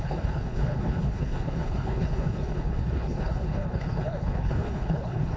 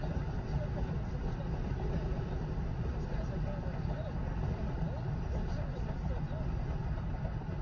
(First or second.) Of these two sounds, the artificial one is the first